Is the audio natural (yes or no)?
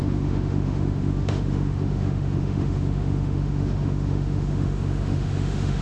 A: no